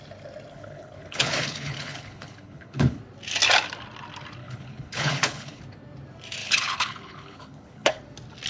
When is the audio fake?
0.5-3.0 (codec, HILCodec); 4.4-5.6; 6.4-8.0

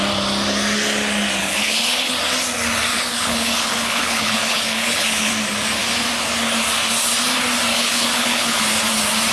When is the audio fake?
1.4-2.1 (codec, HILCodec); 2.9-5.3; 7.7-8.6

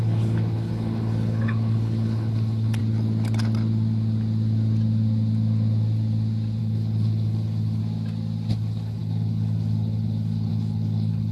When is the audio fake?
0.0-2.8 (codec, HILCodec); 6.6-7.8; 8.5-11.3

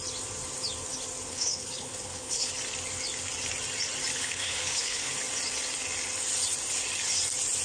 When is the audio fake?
1.3-2.5 (codec, HILCodec); 4.1-5.1

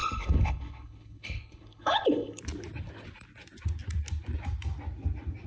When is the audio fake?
0.0-2.4 (codec, HILCodec)

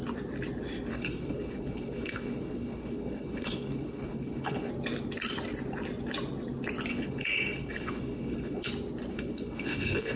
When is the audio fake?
0.9-4.7 (codec, HILCodec); 6.9-8.7; 9.1-10.2